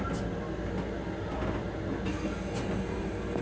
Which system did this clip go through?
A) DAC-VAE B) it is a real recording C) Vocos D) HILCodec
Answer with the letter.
B